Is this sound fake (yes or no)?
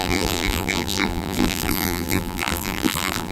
yes